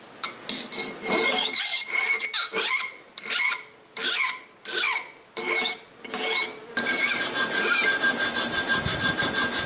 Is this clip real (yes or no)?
yes